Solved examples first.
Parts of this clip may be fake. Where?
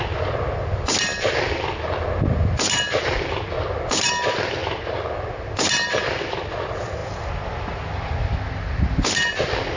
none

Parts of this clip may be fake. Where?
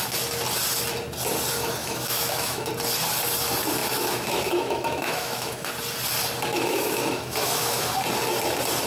1.8-2.7 (autoencoder, DAC-VAE); 3.8-5.7; 6.5-7.9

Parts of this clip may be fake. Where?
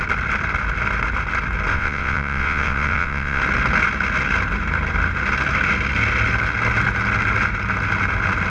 1.7-3.4 (vocoder, WaveNeXt)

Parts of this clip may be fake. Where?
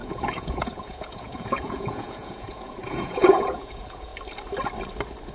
0.0-4.1 (vocoder, Vocos)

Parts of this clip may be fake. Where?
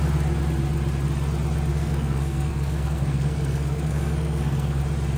1.7-4.8 (codec, SNAC)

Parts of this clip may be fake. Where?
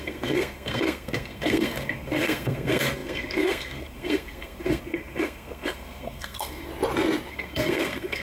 0.0-6.7 (codec, SNAC); 7.3-8.2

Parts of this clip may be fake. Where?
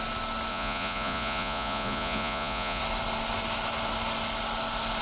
0.5-2.8 (vocoder, Vocos)